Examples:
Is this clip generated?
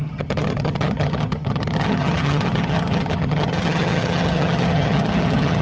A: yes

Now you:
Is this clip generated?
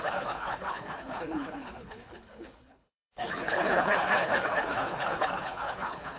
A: yes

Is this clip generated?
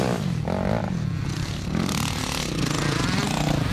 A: no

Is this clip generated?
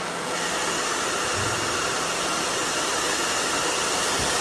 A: no